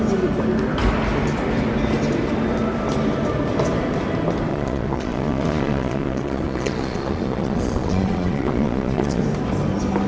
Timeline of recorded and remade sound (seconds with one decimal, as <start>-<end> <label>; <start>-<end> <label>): 0.0-4.5 recorded; 4.5-9.2 remade; 9.2-10.1 recorded